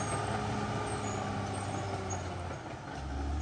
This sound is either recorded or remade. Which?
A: recorded